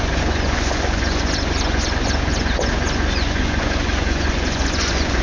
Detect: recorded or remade remade